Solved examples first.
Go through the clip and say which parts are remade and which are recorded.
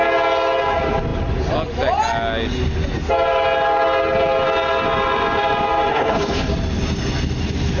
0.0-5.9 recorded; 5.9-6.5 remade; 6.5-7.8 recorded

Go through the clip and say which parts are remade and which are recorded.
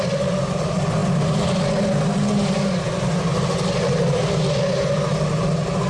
0.0-5.9 recorded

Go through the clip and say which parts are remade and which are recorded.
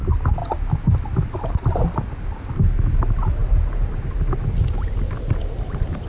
0.0-6.1 recorded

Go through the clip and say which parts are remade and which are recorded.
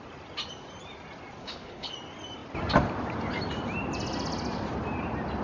0.0-1.4 recorded; 1.4-1.9 remade; 1.9-5.4 recorded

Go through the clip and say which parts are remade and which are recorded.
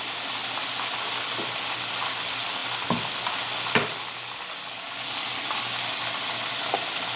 0.0-7.2 recorded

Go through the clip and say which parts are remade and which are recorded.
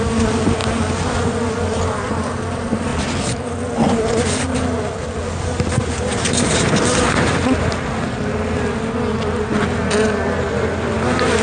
0.0-11.4 recorded